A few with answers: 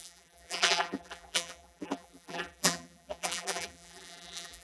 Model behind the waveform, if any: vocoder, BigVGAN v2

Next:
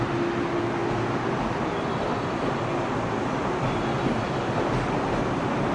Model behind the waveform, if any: none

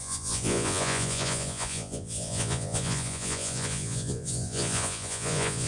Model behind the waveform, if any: vocoder, Vocos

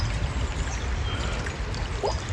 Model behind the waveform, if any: none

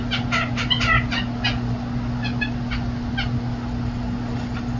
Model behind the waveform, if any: none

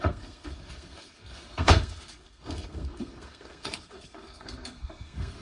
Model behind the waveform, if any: codec, SNAC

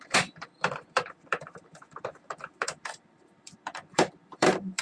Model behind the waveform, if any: vocoder, BigVGAN v2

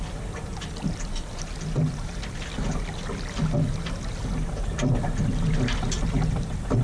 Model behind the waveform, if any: none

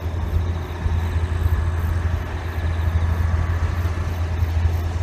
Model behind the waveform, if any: none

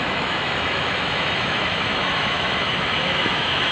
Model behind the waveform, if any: autoencoder, DAC-VAE